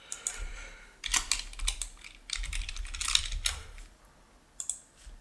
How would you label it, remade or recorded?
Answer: recorded